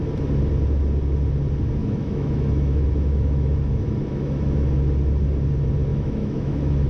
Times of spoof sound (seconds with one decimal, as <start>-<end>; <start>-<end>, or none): 1.8-4.8; 5.9-6.9